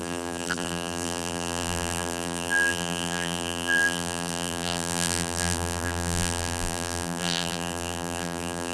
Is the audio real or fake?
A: fake